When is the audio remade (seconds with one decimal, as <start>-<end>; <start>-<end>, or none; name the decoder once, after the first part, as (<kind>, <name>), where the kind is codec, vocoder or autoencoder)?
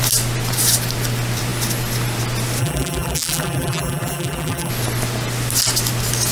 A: 2.6-4.7 (vocoder, BigVGAN v2)